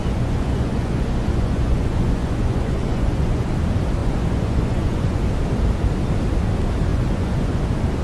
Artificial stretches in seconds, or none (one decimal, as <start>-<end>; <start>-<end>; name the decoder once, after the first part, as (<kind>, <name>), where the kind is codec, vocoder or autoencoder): 0.0-3.5 (vocoder, Vocos); 4.0-5.2; 6.9-7.6